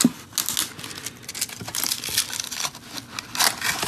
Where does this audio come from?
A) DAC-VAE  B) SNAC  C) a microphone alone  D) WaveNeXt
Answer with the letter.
C